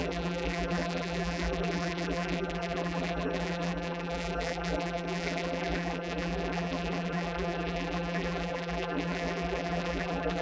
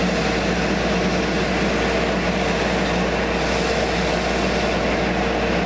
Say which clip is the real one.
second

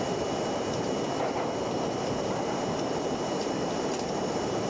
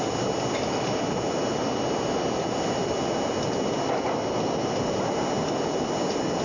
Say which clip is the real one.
second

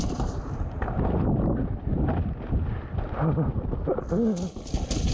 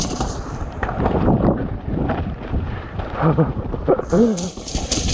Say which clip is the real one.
first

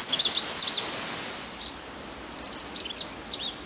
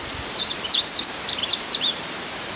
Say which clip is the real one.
first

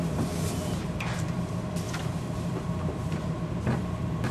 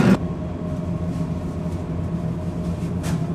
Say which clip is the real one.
second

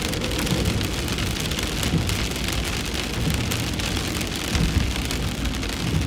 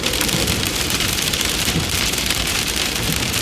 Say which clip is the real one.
first